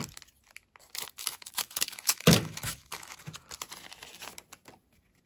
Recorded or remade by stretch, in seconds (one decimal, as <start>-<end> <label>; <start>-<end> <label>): 0.0-1.2 recorded; 1.2-3.2 remade; 3.2-5.3 recorded